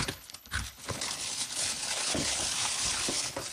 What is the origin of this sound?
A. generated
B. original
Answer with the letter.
A